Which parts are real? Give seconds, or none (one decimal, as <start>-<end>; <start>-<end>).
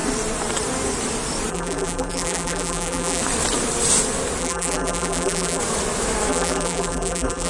0.0-1.5; 3.2-4.4; 5.6-6.3